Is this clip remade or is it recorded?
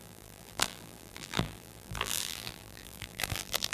remade